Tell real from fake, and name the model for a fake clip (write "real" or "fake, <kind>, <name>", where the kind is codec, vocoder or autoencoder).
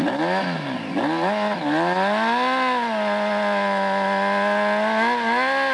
real